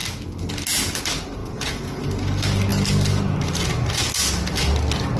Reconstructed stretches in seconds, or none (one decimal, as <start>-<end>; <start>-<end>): 1.4-2.0